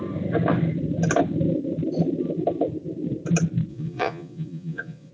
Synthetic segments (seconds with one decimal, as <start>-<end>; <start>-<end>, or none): 3.7-5.1